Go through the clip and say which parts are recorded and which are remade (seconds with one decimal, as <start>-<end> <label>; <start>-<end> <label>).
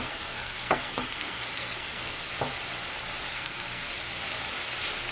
0.0-2.3 remade; 2.3-3.3 recorded; 3.3-3.9 remade; 3.9-5.1 recorded